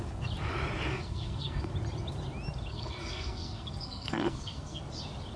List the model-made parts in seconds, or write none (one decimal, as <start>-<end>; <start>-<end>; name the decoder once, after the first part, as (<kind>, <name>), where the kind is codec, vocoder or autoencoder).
0.9-1.7 (codec, SNAC); 2.7-4.8